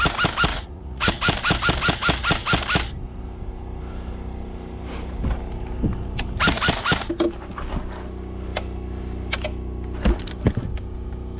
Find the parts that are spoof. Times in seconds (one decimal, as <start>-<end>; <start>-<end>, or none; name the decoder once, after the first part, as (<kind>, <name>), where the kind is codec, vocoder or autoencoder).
0.5-1.1 (vocoder, Vocos)